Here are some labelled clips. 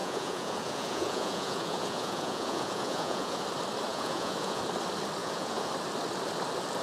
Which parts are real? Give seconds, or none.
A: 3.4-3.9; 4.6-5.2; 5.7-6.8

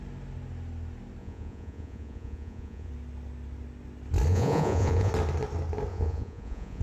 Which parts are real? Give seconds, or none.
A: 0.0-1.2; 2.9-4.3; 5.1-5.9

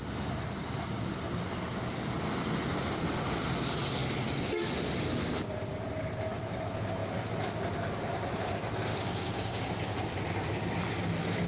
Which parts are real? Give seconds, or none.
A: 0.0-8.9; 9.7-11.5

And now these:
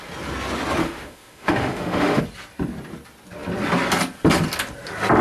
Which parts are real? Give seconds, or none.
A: 0.0-0.8; 2.2-5.2

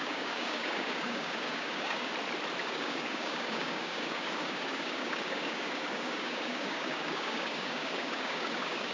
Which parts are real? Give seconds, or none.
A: 2.1-2.6